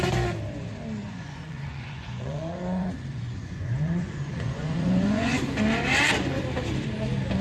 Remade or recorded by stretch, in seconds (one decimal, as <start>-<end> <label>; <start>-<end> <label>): 0.0-1.0 recorded; 1.0-5.4 remade; 5.4-7.4 recorded